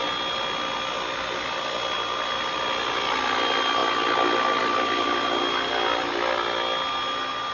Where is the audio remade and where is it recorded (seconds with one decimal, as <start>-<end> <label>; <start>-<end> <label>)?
0.0-7.5 recorded